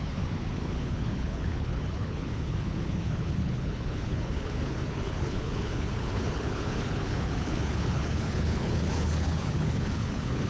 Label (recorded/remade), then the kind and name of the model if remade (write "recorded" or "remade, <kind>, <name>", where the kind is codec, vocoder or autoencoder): remade, codec, HILCodec